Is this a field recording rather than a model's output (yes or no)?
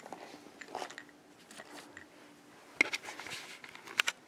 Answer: yes